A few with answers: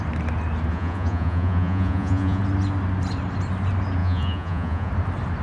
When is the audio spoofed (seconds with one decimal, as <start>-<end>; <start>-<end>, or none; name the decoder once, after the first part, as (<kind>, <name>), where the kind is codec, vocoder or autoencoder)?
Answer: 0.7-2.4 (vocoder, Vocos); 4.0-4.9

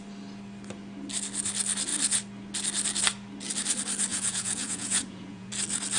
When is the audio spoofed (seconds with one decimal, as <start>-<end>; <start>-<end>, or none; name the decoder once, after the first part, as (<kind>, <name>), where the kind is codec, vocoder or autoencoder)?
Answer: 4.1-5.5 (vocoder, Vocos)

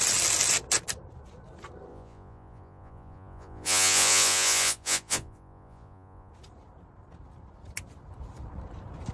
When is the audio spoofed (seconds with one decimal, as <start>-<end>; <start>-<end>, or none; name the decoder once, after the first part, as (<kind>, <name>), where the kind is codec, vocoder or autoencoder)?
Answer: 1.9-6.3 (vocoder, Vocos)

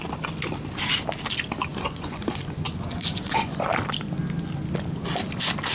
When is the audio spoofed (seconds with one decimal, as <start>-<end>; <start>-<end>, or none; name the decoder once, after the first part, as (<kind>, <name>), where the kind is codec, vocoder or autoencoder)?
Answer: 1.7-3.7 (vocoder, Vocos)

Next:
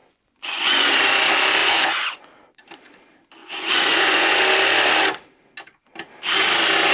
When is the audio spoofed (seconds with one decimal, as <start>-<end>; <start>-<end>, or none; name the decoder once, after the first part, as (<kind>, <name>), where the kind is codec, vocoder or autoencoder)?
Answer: 0.0-0.9 (vocoder, Vocos); 1.6-2.2; 3.4-4.4